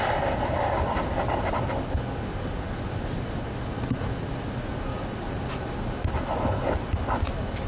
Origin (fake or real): real